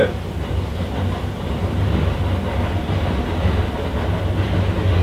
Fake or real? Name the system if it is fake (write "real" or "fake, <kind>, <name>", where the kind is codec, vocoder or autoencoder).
real